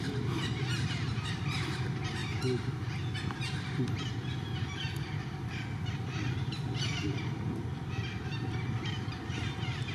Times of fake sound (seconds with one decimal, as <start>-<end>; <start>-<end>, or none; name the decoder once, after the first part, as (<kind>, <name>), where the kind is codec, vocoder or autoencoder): 0.0-2.2 (vocoder, BigVGAN v2); 5.0-9.9